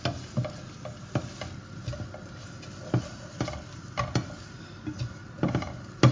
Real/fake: real